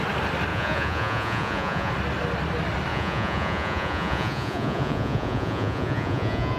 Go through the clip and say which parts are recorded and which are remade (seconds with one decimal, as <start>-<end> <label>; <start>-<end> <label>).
0.0-0.5 recorded; 0.5-1.9 remade; 1.9-2.9 recorded; 2.9-6.6 remade

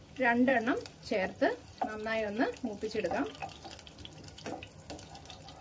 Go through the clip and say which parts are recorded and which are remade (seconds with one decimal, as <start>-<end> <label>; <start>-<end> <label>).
0.0-0.5 recorded; 0.5-2.5 remade; 2.5-5.6 recorded

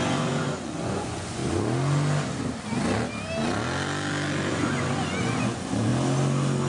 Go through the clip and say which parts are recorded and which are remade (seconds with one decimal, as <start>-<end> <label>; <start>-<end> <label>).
0.0-1.4 remade; 1.4-4.5 recorded; 4.5-5.9 remade; 5.9-6.7 recorded